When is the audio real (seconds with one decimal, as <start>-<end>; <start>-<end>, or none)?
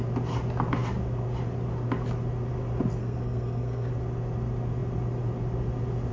0.0-3.0; 3.9-6.1